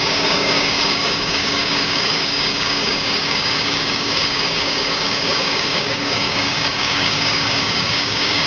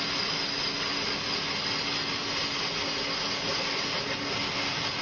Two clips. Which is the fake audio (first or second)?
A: first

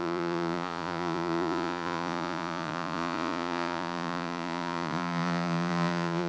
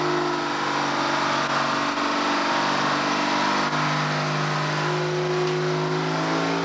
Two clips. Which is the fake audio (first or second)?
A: first